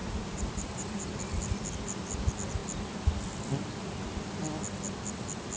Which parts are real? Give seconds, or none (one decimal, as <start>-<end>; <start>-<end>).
1.2-5.6